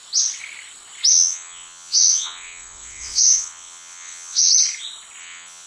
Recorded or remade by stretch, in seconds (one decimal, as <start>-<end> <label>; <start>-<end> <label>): 0.0-1.1 recorded; 1.1-4.5 remade; 4.5-5.2 recorded; 5.2-5.7 remade